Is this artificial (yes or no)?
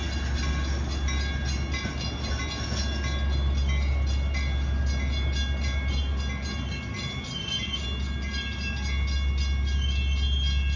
no